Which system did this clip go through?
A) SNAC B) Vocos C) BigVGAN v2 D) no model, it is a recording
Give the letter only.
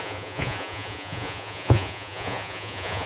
B